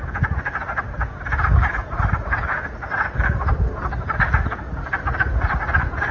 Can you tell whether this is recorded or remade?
recorded